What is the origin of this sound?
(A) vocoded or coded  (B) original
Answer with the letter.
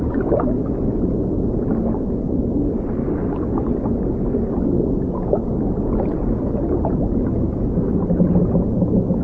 B